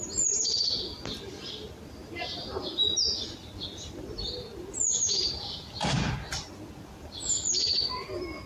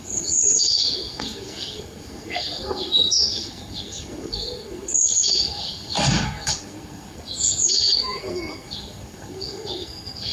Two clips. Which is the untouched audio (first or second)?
first